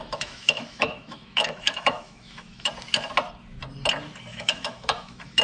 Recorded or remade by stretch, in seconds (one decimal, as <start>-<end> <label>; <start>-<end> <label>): 0.0-2.7 remade; 2.7-4.3 recorded; 4.3-5.4 remade